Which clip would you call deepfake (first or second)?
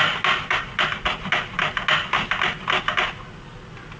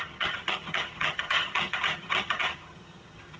second